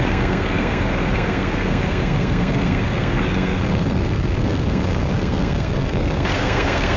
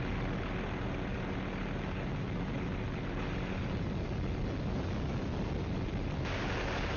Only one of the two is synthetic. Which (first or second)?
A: first